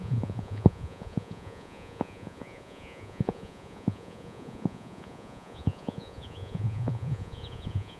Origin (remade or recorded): remade